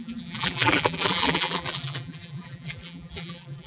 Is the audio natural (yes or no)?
no